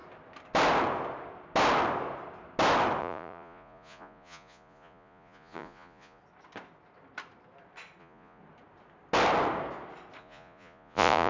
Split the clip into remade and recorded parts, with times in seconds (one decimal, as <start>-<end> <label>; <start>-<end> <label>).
0.0-3.0 recorded; 3.0-6.2 remade; 6.2-8.0 recorded; 8.0-8.4 remade; 8.4-10.2 recorded; 10.2-11.3 remade

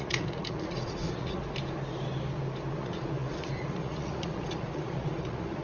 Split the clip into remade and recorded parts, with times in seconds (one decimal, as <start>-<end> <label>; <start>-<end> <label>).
0.0-1.4 remade; 1.4-2.8 recorded; 2.8-5.6 remade

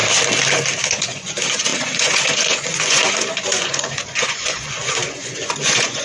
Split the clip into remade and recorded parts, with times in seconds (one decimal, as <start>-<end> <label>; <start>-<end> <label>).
0.0-0.9 recorded; 0.9-6.0 remade

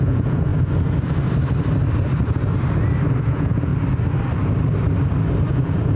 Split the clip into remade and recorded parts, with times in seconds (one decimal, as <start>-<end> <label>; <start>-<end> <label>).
0.0-0.5 remade; 0.5-3.2 recorded; 3.2-3.7 remade; 3.7-5.5 recorded; 5.5-6.0 remade

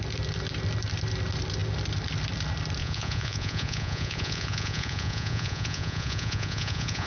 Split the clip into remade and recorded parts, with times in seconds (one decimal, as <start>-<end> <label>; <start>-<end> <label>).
0.0-2.8 recorded; 2.8-7.1 remade

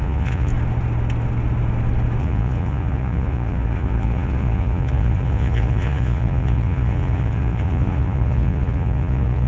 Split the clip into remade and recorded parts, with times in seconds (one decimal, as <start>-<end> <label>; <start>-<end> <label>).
0.0-0.5 remade; 0.5-2.2 recorded; 2.2-9.5 remade

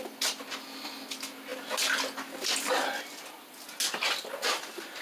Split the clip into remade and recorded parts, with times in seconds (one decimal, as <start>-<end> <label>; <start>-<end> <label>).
0.0-5.0 recorded

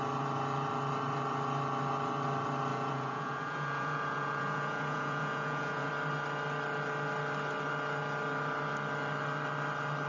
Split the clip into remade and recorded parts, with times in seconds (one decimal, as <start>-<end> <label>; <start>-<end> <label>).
0.0-2.7 recorded; 2.7-5.9 remade; 5.9-10.1 recorded